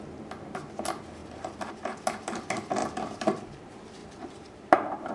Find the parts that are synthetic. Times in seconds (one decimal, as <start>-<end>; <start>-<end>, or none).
1.2-1.7; 2.8-3.4; 4.0-5.1